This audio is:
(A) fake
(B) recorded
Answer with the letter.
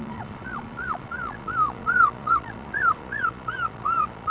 A